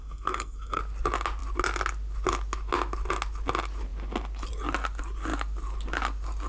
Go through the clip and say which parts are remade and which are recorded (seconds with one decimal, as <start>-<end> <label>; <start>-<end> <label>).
0.0-0.8 remade; 0.8-6.5 recorded